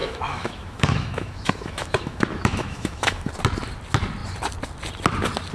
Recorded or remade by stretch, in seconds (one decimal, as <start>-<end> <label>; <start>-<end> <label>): 0.0-3.3 remade; 3.3-5.5 recorded